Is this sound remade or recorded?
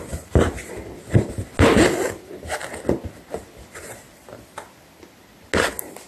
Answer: recorded